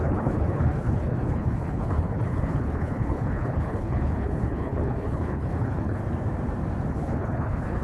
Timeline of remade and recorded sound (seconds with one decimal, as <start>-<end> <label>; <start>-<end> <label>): 0.0-6.0 remade; 6.0-6.9 recorded; 6.9-7.8 remade